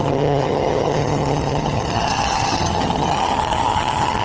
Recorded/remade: remade